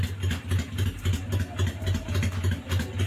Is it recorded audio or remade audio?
recorded